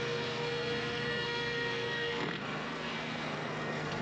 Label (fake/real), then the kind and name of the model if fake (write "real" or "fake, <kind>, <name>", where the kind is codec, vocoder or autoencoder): fake, codec, SNAC